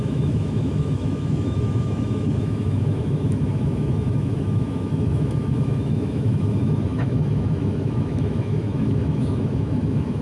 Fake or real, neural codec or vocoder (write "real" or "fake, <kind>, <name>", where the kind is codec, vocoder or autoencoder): fake, autoencoder, DAC-VAE